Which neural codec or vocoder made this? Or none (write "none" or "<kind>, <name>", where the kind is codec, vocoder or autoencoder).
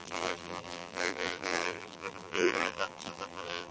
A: vocoder, BigVGAN v2